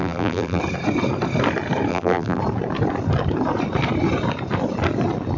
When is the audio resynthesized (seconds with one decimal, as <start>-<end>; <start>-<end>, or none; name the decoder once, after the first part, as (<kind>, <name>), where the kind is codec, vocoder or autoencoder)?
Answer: 0.0-0.6 (vocoder, BigVGAN v2); 1.9-2.4